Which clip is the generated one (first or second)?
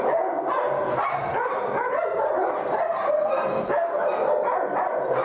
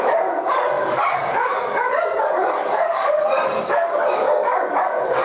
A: second